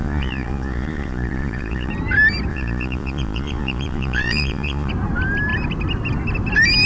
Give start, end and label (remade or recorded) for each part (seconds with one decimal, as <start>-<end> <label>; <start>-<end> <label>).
0.0-1.9 remade; 1.9-2.5 recorded; 2.5-4.9 remade; 4.9-6.9 recorded